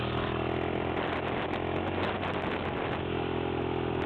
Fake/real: real